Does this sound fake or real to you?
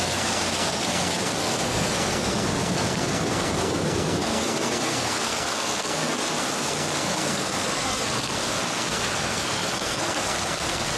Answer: fake